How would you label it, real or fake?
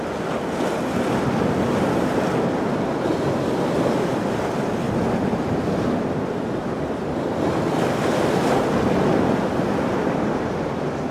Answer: real